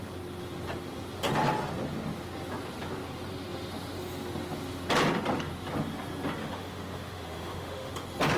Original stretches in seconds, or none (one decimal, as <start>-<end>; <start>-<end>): 0.0-6.4; 7.9-8.4

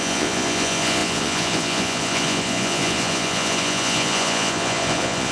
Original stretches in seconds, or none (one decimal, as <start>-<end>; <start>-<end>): none

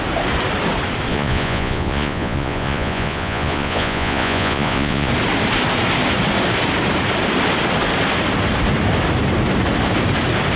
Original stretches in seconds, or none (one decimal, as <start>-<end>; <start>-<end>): 0.0-1.1; 5.1-10.6

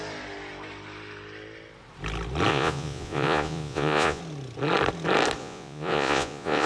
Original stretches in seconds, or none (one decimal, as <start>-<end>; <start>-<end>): 0.0-2.5; 4.2-5.4

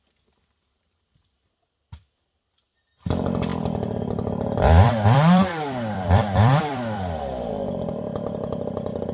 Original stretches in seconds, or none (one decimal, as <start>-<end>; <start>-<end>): 0.0-3.5; 7.5-9.1

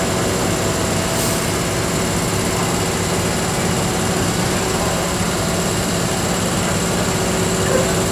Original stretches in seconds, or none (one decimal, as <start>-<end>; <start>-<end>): 0.0-8.1

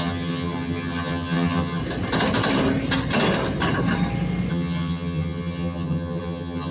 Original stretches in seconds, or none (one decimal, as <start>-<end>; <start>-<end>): 1.8-4.5

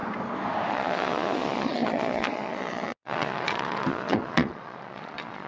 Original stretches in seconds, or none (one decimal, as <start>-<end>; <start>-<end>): 0.0-0.7